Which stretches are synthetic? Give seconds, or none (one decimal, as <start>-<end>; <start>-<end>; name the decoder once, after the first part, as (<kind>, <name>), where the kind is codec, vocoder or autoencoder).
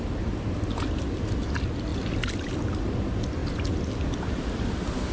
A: none